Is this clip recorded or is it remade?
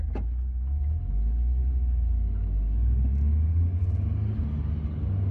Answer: recorded